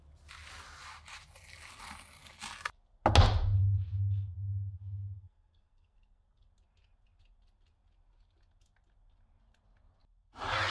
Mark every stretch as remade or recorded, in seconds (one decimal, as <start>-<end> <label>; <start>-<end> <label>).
0.0-3.6 recorded; 3.6-6.5 remade; 6.5-10.7 recorded